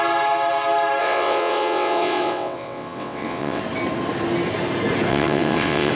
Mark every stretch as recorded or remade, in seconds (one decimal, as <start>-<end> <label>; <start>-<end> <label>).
0.0-1.0 recorded; 1.0-3.6 remade; 3.6-5.1 recorded; 5.1-5.9 remade